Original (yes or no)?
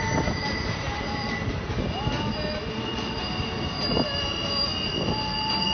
yes